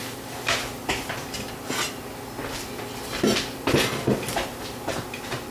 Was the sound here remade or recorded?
recorded